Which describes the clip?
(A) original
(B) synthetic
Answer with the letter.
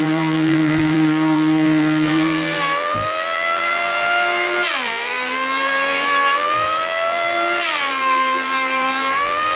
B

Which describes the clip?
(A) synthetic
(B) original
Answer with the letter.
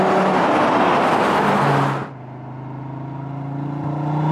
B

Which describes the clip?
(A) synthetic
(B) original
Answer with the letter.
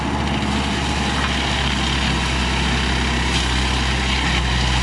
B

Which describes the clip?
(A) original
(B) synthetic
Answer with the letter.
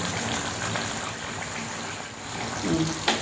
A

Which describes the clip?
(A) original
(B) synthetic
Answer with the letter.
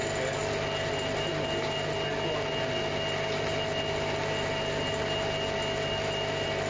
A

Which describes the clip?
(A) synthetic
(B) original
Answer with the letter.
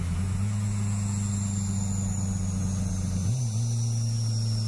B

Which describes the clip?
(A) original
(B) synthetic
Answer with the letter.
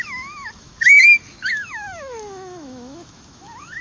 B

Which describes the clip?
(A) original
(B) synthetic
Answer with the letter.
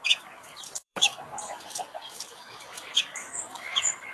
B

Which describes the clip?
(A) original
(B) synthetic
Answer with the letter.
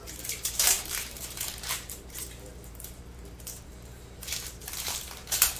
B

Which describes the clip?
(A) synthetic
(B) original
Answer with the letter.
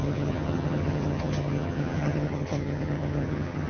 A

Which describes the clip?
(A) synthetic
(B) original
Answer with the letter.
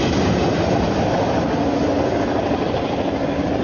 B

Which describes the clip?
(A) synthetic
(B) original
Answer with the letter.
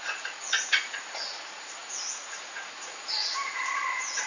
A